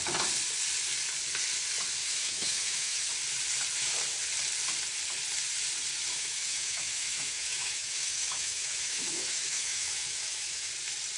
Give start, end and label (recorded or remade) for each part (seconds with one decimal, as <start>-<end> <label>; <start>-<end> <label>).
0.0-2.0 recorded; 2.0-3.1 remade; 3.1-6.1 recorded; 6.1-10.7 remade; 10.7-11.2 recorded